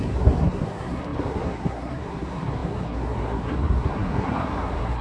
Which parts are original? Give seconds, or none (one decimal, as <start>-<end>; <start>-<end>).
none